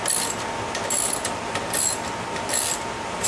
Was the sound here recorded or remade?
recorded